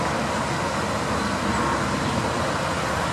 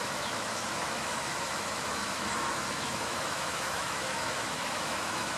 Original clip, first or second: first